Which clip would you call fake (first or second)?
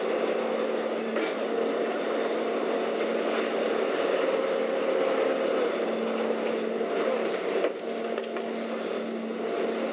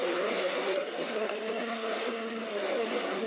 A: second